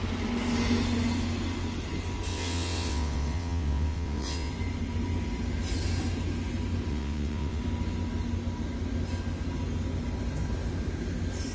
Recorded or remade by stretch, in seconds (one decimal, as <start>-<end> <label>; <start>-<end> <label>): 0.0-2.3 recorded; 2.3-4.5 remade; 4.5-6.9 recorded; 6.9-7.6 remade; 7.6-11.5 recorded